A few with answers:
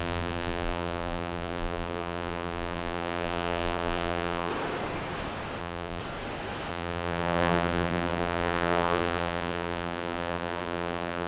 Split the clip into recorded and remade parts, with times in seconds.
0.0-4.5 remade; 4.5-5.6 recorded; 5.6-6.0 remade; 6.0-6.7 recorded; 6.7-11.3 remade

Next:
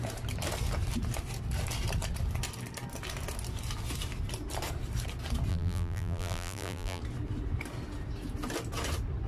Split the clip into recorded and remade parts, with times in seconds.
0.0-5.5 recorded; 5.5-7.0 remade; 7.0-9.3 recorded

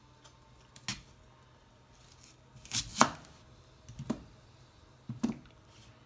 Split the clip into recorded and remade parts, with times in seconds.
0.0-2.9 recorded; 2.9-6.1 remade

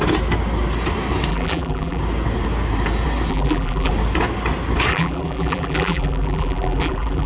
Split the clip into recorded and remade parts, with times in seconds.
0.0-1.3 recorded; 1.3-2.0 remade; 2.0-3.3 recorded; 3.3-3.9 remade; 3.9-4.9 recorded; 4.9-7.3 remade

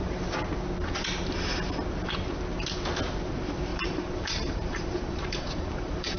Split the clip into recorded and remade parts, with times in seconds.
0.0-3.7 recorded; 3.7-6.2 remade

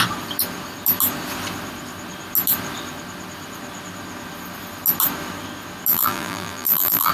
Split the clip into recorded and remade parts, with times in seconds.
0.0-5.9 recorded; 5.9-7.1 remade

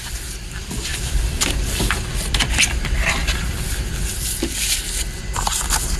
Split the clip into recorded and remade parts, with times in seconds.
0.0-0.9 recorded; 0.9-1.8 remade; 1.8-6.0 recorded

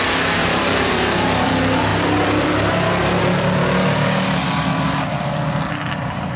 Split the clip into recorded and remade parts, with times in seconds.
0.0-0.4 recorded; 0.4-1.5 remade; 1.5-6.4 recorded